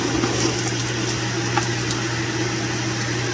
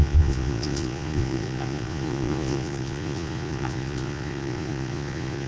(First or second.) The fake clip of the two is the second